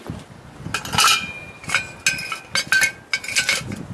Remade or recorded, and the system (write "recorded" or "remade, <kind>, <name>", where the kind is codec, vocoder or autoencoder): recorded